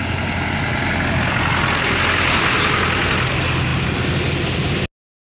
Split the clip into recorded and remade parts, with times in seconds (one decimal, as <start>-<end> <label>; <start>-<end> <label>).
0.0-5.3 recorded